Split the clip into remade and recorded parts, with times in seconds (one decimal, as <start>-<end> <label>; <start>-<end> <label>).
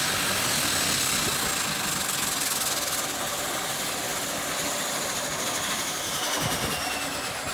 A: 0.0-7.5 recorded